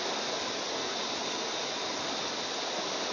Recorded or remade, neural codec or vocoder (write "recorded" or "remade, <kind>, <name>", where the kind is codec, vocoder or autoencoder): recorded